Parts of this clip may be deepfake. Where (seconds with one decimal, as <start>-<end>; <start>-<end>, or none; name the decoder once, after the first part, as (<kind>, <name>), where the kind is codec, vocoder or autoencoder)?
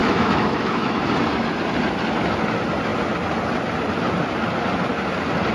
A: 0.0-1.0 (autoencoder, DAC-VAE)